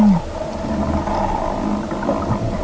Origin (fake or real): real